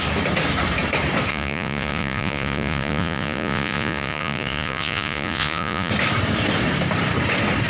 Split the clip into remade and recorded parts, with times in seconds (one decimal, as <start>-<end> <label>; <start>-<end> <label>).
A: 0.0-1.3 recorded; 1.3-5.9 remade; 5.9-7.7 recorded